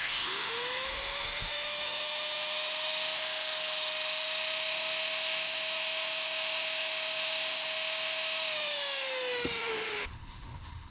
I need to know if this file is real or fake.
fake